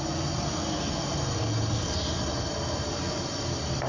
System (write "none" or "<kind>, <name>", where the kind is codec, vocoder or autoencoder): none